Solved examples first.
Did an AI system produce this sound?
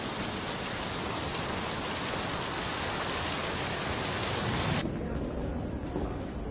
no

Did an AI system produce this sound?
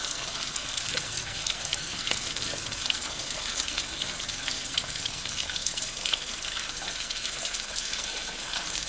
yes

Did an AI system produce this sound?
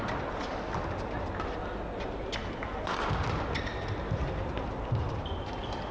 no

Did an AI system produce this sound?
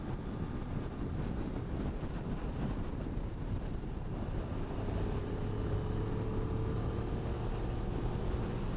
no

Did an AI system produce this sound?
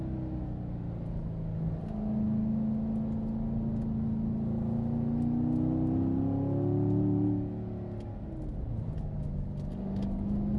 no